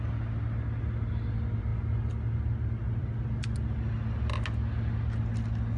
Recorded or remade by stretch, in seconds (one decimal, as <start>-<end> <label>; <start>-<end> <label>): 0.0-5.8 recorded